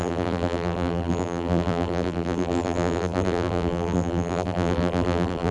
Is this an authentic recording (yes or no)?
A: no